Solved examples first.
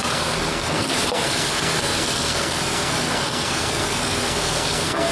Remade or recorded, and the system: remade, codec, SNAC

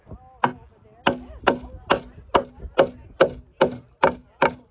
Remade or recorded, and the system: recorded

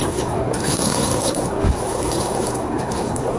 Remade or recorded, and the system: remade, codec, SNAC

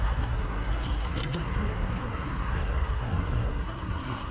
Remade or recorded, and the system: remade, codec, SNAC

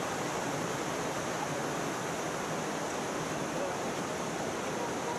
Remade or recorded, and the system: recorded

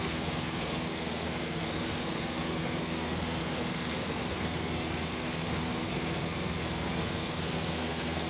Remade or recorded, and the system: remade, codec, SNAC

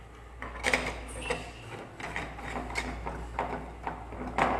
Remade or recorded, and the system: recorded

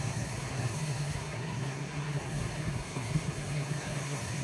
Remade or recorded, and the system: remade, codec, SNAC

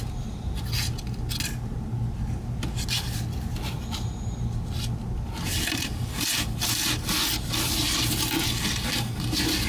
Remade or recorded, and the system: recorded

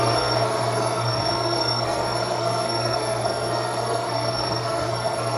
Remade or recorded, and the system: remade, codec, SNAC